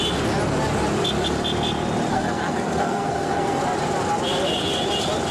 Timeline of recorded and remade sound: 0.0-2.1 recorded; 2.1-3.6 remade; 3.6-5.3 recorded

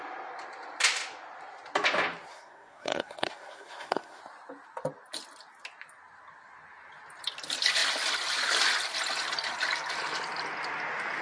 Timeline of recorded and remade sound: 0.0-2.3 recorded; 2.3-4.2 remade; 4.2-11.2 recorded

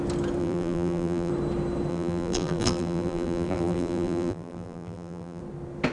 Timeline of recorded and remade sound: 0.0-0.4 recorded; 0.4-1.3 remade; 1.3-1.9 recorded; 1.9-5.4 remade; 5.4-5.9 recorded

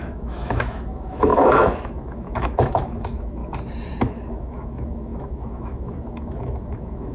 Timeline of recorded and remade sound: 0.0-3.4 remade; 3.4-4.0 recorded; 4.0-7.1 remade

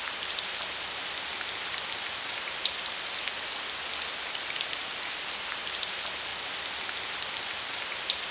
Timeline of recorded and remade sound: 0.0-8.3 recorded

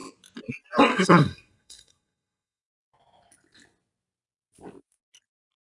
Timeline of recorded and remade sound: 0.0-0.9 recorded; 0.9-2.8 remade; 2.8-5.6 recorded

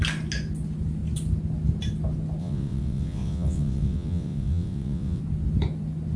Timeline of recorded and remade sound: 0.0-2.4 recorded; 2.4-5.2 remade; 5.2-6.2 recorded